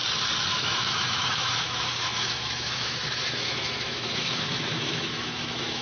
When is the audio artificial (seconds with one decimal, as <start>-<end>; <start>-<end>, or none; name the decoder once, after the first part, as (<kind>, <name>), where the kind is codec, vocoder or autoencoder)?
0.5-5.8 (autoencoder, DAC-VAE)